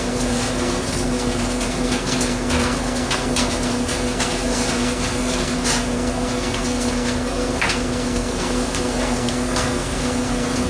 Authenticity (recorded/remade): remade